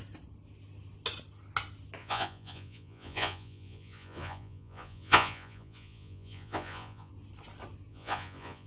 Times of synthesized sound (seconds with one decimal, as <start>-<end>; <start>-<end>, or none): 2.0-7.1; 7.9-8.7